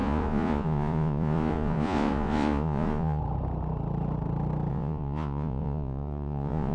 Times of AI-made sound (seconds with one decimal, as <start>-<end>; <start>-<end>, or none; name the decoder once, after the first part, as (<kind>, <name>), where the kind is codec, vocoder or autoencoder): 0.0-3.2 (vocoder, Vocos); 4.7-6.7